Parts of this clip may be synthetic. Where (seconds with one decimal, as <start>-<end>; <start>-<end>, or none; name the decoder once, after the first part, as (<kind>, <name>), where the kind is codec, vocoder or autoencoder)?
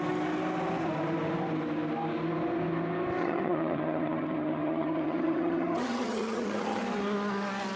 3.2-6.8 (vocoder, HiFi-GAN)